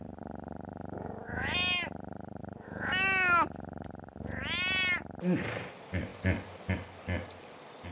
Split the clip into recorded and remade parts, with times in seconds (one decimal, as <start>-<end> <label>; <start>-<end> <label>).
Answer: 0.0-7.9 recorded